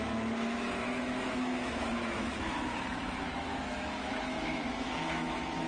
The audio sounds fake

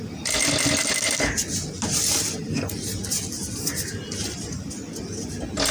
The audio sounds real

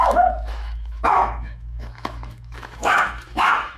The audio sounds fake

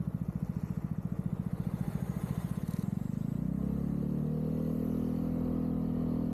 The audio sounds real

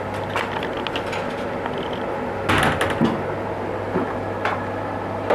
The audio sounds real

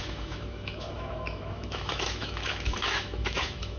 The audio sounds fake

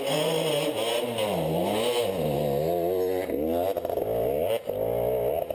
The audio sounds real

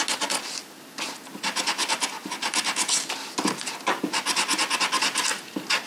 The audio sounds real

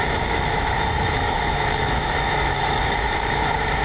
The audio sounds fake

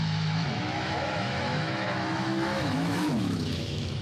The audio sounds fake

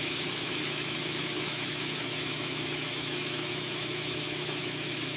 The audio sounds fake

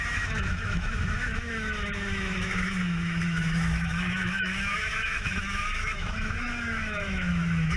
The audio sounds fake